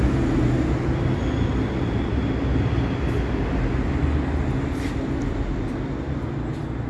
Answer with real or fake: real